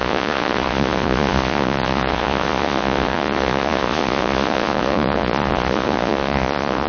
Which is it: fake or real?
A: fake